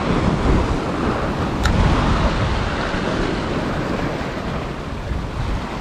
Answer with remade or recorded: recorded